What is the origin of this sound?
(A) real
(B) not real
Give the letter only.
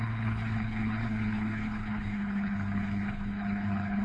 B